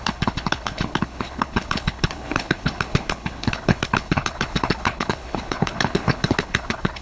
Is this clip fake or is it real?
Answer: fake